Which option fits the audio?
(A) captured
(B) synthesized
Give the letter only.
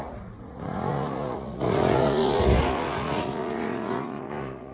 B